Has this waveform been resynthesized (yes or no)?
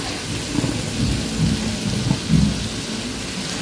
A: no